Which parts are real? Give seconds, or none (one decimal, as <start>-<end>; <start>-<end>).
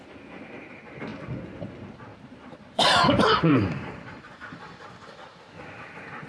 0.0-2.1; 3.8-6.3